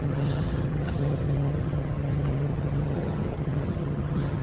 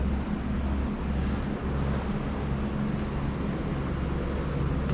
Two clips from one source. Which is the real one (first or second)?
second